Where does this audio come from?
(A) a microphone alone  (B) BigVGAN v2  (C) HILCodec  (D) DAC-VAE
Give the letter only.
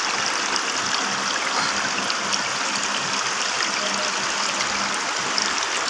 A